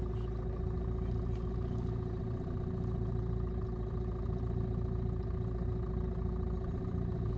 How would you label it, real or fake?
real